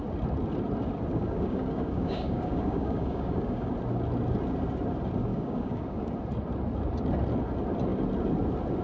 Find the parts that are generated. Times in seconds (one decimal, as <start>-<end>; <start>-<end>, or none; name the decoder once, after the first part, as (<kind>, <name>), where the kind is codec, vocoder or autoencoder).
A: 1.1-3.7 (codec, DAC); 5.3-6.1